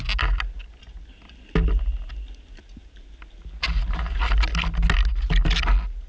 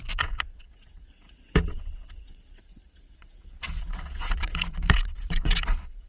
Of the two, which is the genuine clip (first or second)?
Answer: first